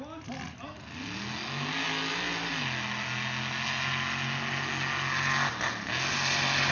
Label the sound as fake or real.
real